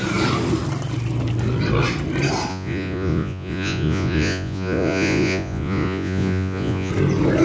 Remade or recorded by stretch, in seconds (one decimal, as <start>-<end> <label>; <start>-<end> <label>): 0.0-2.5 recorded; 2.5-6.9 remade; 6.9-7.4 recorded